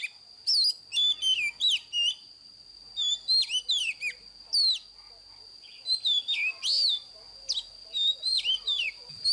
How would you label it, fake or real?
real